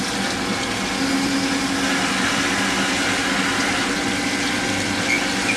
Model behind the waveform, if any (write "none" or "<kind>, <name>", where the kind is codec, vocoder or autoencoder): none